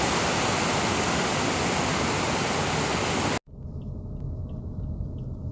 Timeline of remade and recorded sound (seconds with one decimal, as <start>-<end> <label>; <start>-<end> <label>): 0.0-5.5 recorded